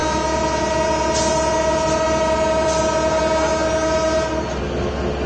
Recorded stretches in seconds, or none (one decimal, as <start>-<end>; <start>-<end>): 0.0-5.3